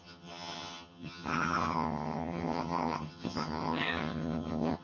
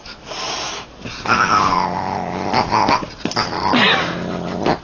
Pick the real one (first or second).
second